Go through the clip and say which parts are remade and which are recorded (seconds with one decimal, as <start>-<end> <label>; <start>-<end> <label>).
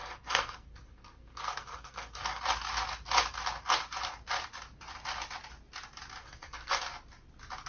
0.0-2.4 remade; 2.4-6.2 recorded; 6.2-6.8 remade; 6.8-7.7 recorded